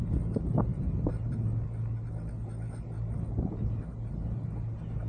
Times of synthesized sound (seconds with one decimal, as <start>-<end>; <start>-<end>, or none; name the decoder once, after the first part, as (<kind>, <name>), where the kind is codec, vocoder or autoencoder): none